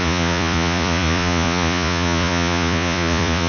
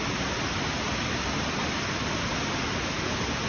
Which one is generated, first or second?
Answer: first